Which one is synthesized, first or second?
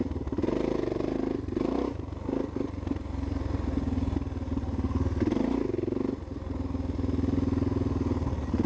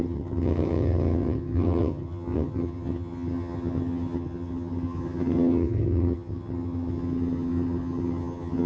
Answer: second